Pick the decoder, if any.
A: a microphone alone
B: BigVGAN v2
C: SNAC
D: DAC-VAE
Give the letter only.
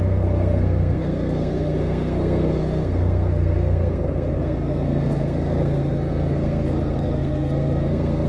C